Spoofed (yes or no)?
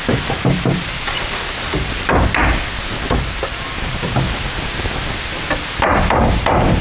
no